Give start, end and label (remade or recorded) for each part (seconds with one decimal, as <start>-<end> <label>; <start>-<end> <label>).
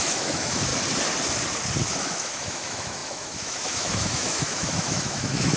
0.0-0.7 remade; 0.7-1.9 recorded; 1.9-5.6 remade